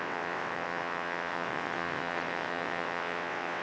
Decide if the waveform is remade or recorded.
remade